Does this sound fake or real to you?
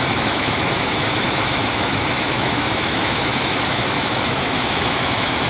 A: fake